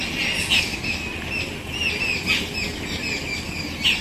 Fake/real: real